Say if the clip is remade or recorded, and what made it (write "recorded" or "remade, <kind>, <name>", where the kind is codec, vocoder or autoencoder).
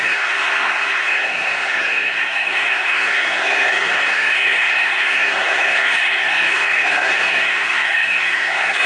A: remade, codec, SNAC